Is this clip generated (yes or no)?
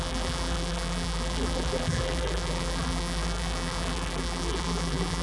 yes